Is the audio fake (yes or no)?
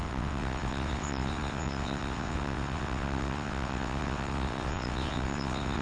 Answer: yes